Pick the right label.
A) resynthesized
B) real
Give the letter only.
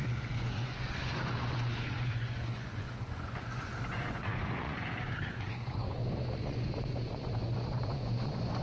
A